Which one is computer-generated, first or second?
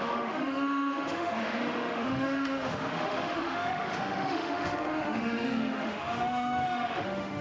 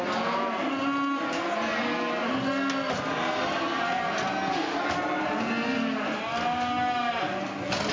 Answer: first